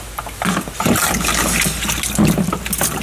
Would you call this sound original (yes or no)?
yes